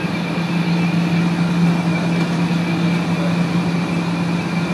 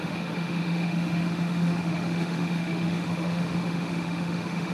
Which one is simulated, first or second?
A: second